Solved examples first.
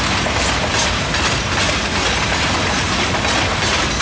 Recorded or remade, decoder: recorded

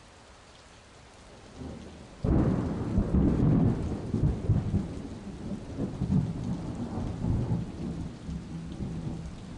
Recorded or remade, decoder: recorded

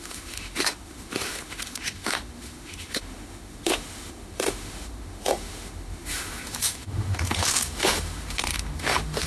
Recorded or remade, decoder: remade, autoencoder, DAC-VAE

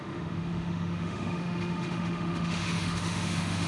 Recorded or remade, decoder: remade, autoencoder, DAC-VAE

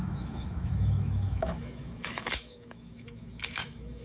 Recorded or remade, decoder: remade, autoencoder, DAC-VAE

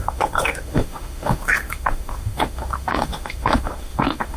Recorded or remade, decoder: remade, autoencoder, DAC-VAE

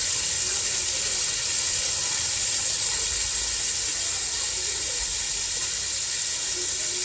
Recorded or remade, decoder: recorded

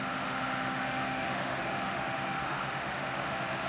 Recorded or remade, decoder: remade, autoencoder, DAC-VAE